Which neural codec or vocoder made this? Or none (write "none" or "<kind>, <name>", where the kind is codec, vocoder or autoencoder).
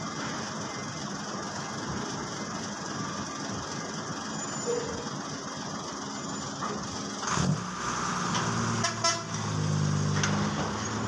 none